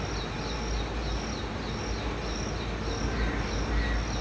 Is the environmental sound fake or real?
real